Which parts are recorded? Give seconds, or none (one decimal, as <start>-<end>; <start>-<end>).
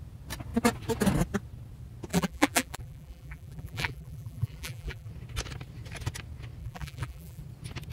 0.0-2.1; 5.1-6.6; 7.4-7.9